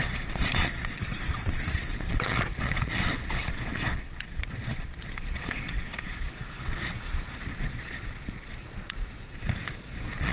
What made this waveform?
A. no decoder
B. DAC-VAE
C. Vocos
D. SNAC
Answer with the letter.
C